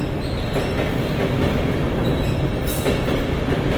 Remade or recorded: recorded